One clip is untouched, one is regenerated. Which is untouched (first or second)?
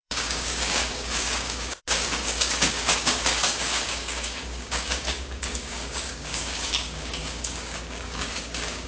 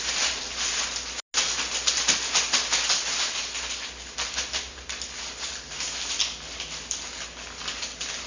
second